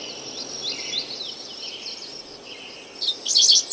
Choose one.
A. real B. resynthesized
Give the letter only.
A